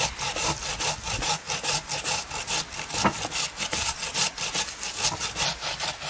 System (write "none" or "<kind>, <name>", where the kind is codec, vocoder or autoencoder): none